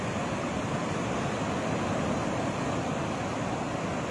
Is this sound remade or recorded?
recorded